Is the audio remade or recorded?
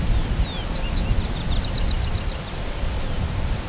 recorded